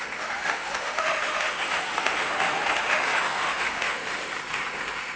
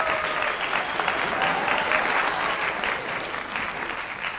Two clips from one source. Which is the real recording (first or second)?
second